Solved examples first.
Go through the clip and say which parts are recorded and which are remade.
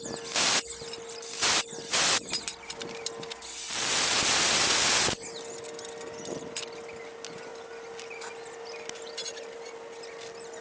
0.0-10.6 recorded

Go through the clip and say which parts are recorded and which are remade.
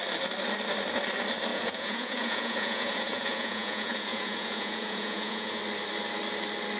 0.0-1.5 recorded; 1.5-5.6 remade; 5.6-6.8 recorded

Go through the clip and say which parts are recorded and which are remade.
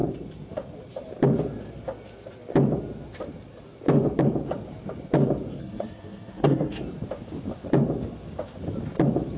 0.0-5.6 recorded; 5.6-6.8 remade; 6.8-9.4 recorded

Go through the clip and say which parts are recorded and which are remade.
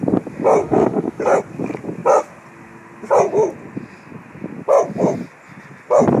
0.0-0.6 recorded; 0.6-1.2 remade; 1.2-6.2 recorded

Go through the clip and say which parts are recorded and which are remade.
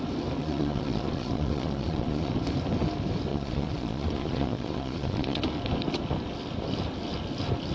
0.0-0.4 recorded; 0.4-2.3 remade; 2.3-3.3 recorded; 3.3-5.4 remade; 5.4-7.7 recorded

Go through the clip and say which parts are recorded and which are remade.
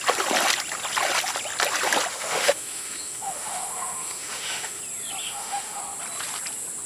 0.0-2.1 recorded; 2.1-4.8 remade; 4.8-5.2 recorded; 5.2-5.8 remade; 5.8-6.9 recorded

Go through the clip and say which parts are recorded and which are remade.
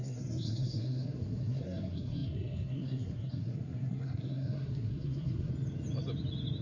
0.0-5.5 remade; 5.5-6.6 recorded